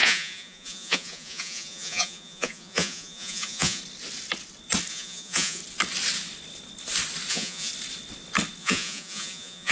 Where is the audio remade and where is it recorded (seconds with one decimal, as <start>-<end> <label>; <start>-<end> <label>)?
0.0-3.8 remade; 3.8-4.9 recorded; 4.9-5.6 remade; 5.6-7.3 recorded; 7.3-7.7 remade; 7.7-8.6 recorded; 8.6-9.7 remade